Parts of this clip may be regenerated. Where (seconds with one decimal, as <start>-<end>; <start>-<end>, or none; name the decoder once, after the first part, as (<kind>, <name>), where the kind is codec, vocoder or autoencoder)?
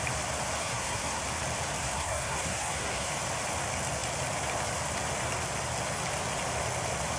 0.6-1.2 (codec, SNAC); 1.8-3.1